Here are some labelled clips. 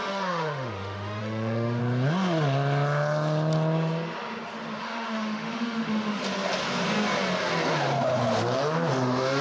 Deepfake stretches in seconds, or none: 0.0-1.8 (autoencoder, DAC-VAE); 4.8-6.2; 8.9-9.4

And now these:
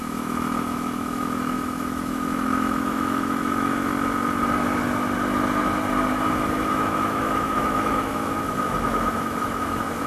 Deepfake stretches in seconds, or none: 0.0-3.9 (autoencoder, DAC-VAE); 6.3-10.1